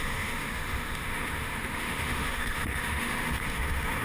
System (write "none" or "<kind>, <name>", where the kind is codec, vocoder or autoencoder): autoencoder, DAC-VAE